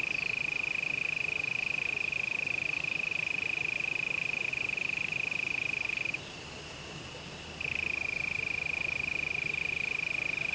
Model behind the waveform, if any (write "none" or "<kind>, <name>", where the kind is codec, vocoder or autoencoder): none